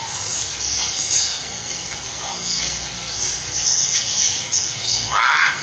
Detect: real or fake fake